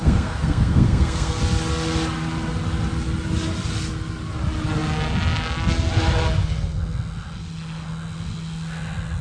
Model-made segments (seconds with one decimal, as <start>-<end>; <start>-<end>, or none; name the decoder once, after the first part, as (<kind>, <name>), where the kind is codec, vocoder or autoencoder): 0.0-1.4 (codec, SNAC)